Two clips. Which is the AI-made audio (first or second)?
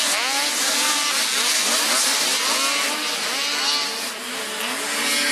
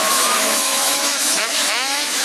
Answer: second